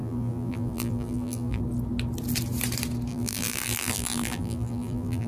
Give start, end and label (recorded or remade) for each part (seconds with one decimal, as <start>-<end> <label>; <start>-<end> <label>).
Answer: 0.0-1.6 remade; 1.6-3.1 recorded; 3.1-5.3 remade